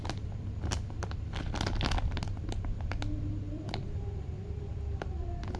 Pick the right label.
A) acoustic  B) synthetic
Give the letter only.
A